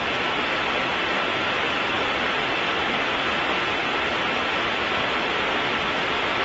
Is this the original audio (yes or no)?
yes